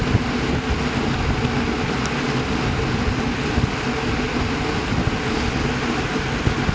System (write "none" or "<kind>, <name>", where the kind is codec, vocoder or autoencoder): none